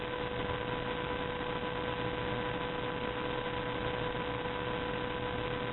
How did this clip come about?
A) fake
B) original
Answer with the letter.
B